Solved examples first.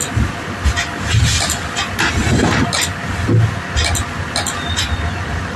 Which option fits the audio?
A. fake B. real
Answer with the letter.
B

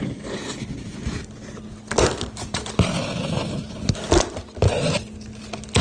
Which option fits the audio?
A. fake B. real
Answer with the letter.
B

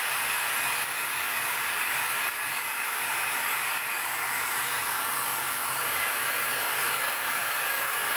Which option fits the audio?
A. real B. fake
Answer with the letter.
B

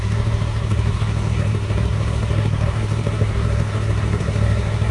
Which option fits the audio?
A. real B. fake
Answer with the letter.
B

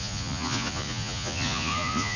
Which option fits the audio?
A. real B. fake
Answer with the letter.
B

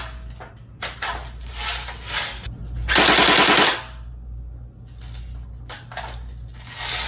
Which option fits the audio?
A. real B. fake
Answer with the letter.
A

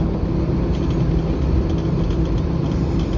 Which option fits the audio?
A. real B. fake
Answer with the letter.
A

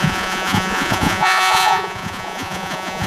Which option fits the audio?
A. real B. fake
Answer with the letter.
B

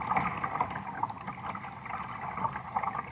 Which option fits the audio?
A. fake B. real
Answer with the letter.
B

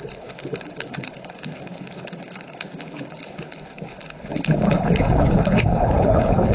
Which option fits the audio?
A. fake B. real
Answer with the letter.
A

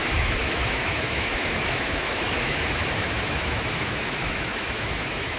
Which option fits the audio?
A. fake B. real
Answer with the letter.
A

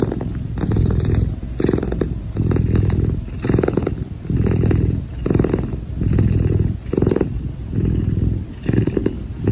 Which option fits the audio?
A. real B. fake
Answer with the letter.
A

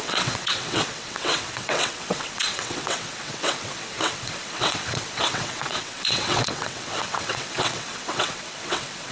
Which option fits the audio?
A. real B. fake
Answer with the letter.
B